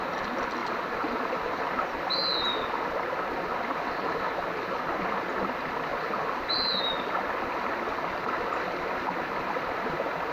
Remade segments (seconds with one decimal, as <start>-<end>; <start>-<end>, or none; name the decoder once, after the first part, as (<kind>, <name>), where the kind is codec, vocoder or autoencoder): 0.6-1.5 (vocoder, BigVGAN v2); 5.9-6.9